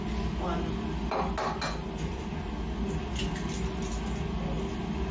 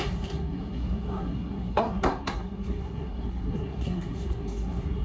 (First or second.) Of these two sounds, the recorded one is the first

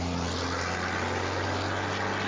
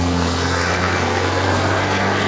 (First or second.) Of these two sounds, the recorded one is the first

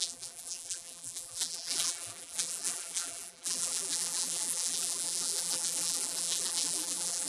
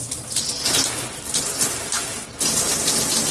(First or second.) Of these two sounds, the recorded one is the second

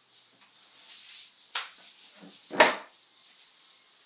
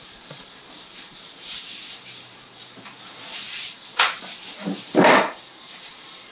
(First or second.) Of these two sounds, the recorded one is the first